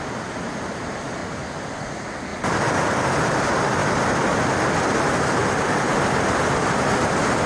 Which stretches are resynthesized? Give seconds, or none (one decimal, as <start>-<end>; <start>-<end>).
1.2-1.9